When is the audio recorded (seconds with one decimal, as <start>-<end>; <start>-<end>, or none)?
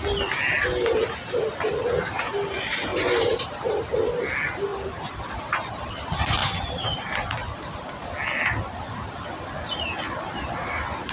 0.0-2.9; 3.7-11.1